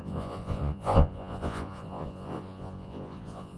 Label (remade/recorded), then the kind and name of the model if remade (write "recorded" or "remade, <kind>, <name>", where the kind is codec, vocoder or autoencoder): remade, vocoder, Vocos